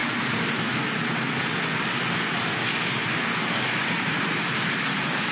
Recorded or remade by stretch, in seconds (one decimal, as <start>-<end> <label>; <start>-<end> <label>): 0.0-1.4 remade; 1.4-2.3 recorded; 2.3-5.3 remade